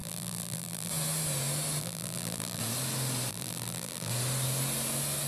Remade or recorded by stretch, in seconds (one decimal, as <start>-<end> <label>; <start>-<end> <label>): 0.0-0.9 remade; 0.9-1.8 recorded; 1.8-2.6 remade; 2.6-3.3 recorded; 3.3-4.1 remade; 4.1-5.3 recorded

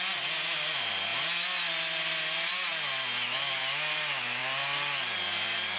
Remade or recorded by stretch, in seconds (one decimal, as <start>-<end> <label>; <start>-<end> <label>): 0.0-5.8 recorded

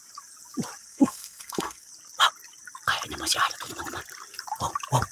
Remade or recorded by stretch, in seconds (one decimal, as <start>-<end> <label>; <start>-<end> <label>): 0.0-0.8 recorded; 0.8-1.9 remade; 1.9-5.1 recorded

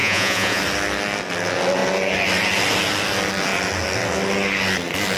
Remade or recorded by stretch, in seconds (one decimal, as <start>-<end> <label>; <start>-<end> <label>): 0.0-0.6 remade; 0.6-5.2 recorded

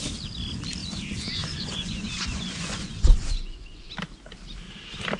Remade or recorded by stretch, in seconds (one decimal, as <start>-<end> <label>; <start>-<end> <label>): 0.0-0.8 recorded; 0.8-3.9 remade; 3.9-5.2 recorded

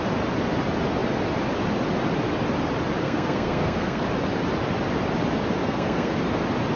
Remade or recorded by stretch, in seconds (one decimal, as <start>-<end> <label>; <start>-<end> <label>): 0.0-3.0 recorded; 3.0-4.0 remade; 4.0-5.6 recorded; 5.6-6.1 remade; 6.1-6.8 recorded

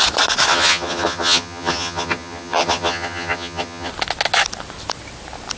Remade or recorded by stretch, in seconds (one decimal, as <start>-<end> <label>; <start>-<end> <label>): 0.0-0.5 recorded; 0.5-3.9 remade; 3.9-5.6 recorded